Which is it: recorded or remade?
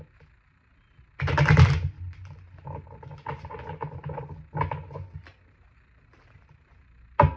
recorded